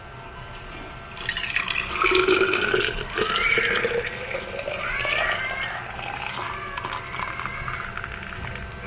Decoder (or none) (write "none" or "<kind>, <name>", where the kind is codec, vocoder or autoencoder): none